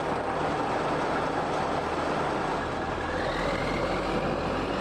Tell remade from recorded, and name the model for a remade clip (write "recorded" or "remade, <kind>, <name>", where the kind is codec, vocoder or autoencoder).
recorded